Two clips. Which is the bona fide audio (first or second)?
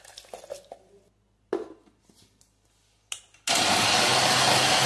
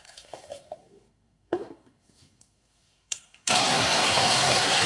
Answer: first